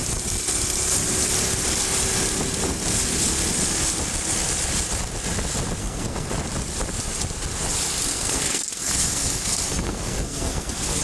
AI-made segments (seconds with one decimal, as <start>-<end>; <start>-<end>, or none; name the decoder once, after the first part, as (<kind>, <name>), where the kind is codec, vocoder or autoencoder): 5.8-6.3 (codec, SNAC); 8.1-11.0